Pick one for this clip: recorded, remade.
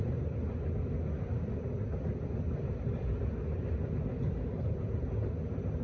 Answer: recorded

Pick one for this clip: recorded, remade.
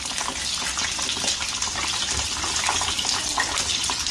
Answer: recorded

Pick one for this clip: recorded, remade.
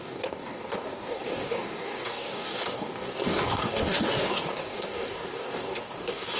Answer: remade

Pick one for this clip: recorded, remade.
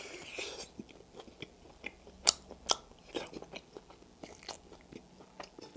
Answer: recorded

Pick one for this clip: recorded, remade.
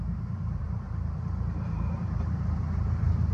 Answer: remade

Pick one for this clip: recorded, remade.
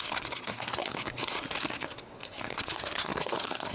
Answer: remade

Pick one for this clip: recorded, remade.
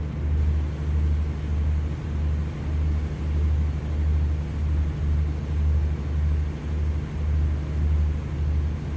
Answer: recorded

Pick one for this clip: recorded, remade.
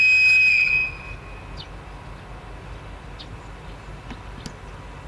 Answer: recorded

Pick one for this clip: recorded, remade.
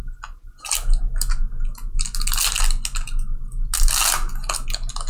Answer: recorded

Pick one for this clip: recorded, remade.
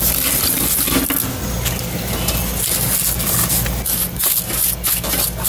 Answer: recorded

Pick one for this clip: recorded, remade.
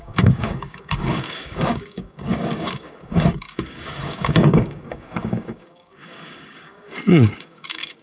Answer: remade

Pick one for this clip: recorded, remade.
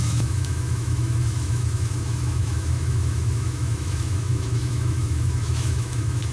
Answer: remade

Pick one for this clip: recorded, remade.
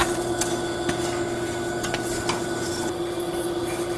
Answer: recorded